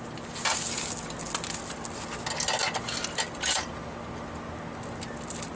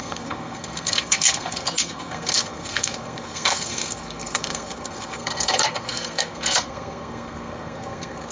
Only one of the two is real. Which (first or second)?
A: first